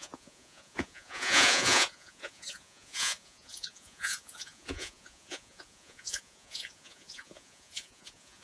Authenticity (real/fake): fake